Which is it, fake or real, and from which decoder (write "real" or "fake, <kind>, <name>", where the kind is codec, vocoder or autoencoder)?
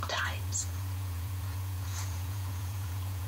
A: fake, vocoder, Vocos